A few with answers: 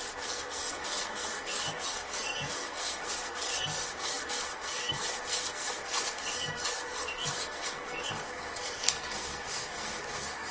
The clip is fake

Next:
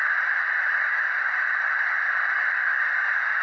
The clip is real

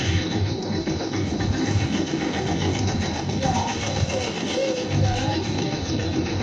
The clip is fake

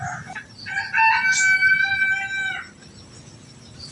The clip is real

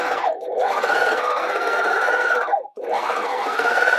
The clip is fake